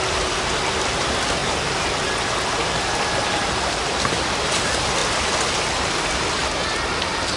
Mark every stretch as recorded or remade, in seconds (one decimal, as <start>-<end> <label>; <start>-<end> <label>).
0.0-1.4 remade; 1.4-3.7 recorded; 3.7-5.0 remade; 5.0-6.0 recorded; 6.0-6.4 remade; 6.4-7.0 recorded; 7.0-7.4 remade